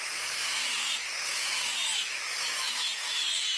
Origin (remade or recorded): remade